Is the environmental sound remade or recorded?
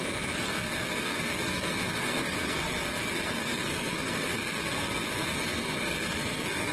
remade